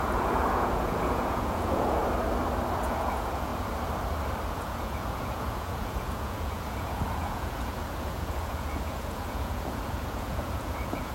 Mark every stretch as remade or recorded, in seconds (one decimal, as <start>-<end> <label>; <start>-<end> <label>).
0.0-2.0 remade; 2.0-2.7 recorded; 2.7-3.5 remade; 3.5-4.5 recorded; 4.5-11.1 remade